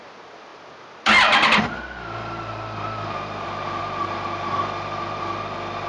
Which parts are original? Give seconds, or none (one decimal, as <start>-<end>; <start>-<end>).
0.0-5.9